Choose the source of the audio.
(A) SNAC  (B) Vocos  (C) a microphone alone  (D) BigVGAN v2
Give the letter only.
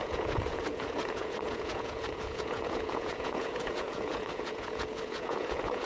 B